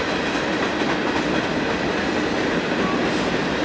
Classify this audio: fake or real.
real